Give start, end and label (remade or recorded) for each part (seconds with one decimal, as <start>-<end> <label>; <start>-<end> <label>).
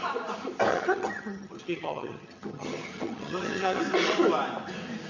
0.0-0.7 recorded; 0.7-3.8 remade; 3.8-5.1 recorded